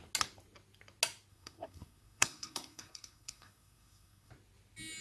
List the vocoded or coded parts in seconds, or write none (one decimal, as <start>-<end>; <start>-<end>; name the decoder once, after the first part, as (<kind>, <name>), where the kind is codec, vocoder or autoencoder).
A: 1.3-4.3 (codec, SNAC)